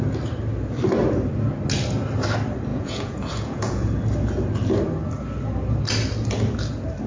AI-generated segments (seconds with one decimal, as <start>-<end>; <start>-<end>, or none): 2.7-3.9